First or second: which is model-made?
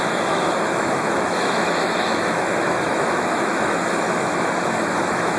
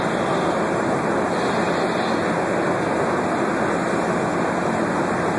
first